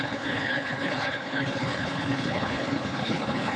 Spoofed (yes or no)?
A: yes